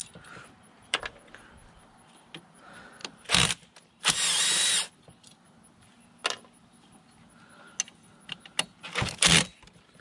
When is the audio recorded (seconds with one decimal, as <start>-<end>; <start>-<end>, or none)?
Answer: 1.0-3.0; 4.9-10.0